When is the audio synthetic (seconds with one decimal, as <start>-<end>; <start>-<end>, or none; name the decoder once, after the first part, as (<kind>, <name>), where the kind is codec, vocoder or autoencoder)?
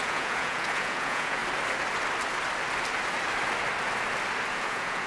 0.0-1.4 (vocoder, Vocos); 4.5-5.1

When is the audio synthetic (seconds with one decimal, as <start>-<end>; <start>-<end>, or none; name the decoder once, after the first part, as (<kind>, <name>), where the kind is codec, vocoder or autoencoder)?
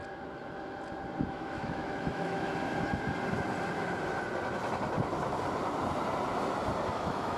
1.3-2.5 (autoencoder, DAC-VAE); 6.9-7.4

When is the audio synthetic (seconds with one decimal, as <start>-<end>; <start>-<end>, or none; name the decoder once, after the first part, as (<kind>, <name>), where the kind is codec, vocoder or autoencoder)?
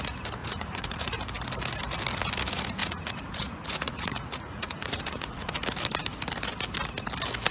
0.4-1.2 (vocoder, Vocos); 2.8-5.5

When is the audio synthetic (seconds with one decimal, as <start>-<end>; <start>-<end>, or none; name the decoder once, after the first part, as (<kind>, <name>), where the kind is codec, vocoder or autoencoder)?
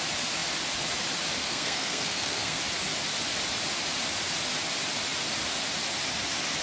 1.4-2.6 (codec, SNAC)